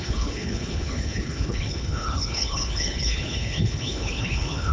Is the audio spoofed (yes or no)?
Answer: yes